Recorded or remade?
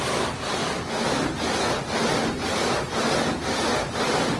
recorded